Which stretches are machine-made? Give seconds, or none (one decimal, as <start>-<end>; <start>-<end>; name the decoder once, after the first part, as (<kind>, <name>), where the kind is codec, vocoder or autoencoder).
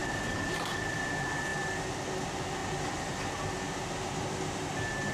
0.0-1.5 (vocoder, BigVGAN v2); 2.2-2.6